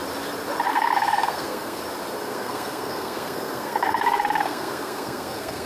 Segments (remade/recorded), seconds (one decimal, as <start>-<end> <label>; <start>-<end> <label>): 0.0-0.7 recorded; 0.7-1.8 remade; 1.8-2.2 recorded; 2.2-5.7 remade